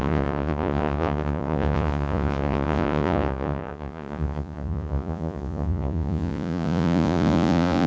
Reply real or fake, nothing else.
fake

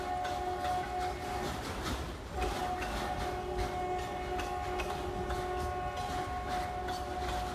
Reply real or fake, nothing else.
real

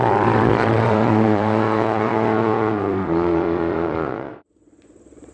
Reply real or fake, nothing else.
fake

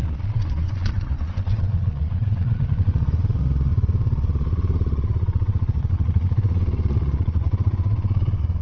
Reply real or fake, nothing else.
fake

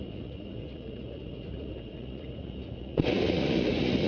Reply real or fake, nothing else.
fake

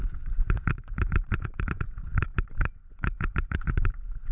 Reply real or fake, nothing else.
fake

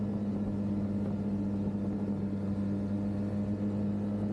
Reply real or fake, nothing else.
real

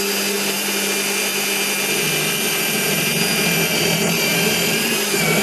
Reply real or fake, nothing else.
real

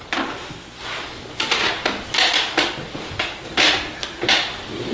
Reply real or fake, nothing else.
real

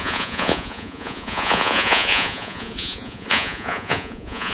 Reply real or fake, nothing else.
fake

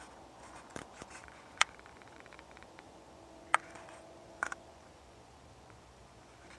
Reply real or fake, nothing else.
fake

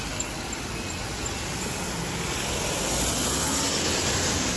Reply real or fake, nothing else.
real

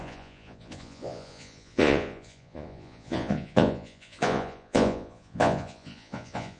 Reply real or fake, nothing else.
fake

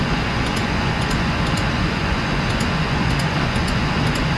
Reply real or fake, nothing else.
fake